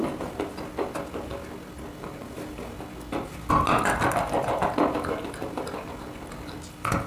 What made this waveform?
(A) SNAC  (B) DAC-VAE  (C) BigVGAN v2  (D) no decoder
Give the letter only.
D